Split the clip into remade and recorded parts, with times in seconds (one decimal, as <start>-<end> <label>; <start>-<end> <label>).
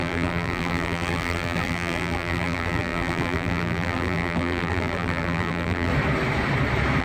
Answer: 0.0-5.9 remade; 5.9-7.0 recorded